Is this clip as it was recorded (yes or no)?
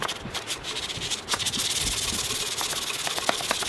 yes